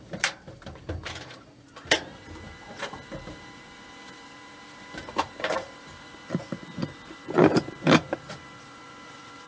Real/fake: fake